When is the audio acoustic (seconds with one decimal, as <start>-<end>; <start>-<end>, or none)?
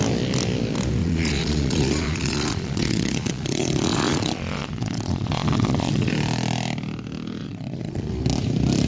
0.0-1.0; 6.1-7.4; 8.1-8.9